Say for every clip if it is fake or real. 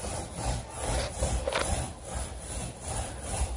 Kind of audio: fake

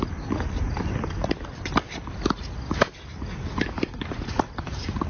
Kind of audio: fake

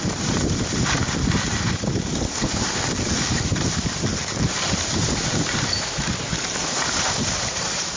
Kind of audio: fake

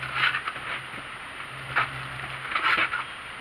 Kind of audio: real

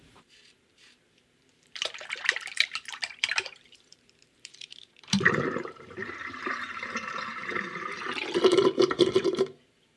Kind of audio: fake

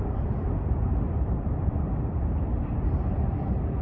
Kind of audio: fake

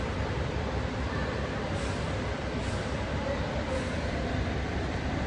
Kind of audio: fake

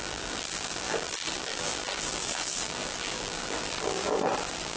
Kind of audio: fake